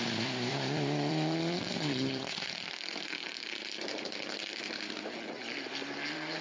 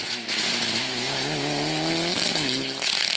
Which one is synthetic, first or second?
first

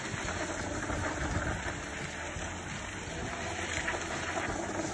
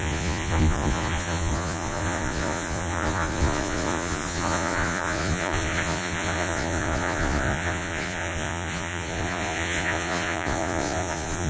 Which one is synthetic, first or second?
second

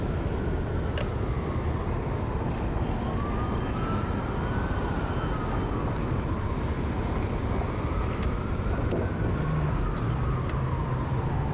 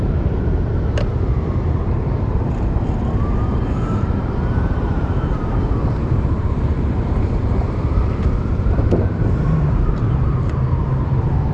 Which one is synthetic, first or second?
second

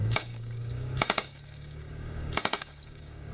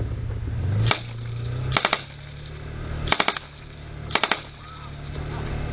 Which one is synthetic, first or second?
first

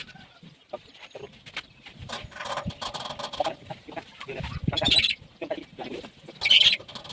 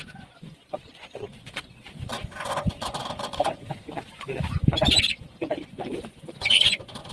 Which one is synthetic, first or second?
second